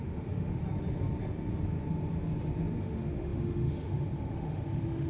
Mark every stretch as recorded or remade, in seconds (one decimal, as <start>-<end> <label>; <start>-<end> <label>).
0.0-0.6 remade; 0.6-2.8 recorded; 2.8-5.1 remade